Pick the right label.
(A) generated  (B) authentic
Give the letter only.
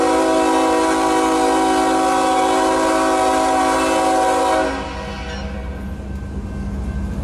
B